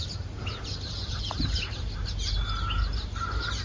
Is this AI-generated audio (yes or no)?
no